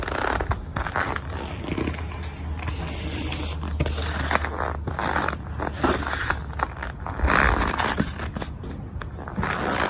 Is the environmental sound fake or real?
real